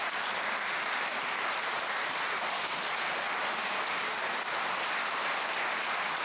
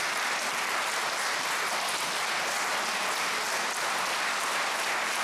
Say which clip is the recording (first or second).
second